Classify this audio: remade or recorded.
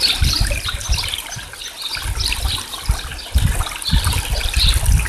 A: recorded